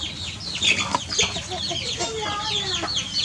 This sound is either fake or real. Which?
real